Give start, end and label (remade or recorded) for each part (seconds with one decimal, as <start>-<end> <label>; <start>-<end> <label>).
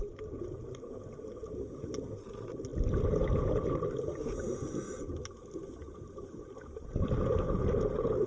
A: 0.0-8.3 recorded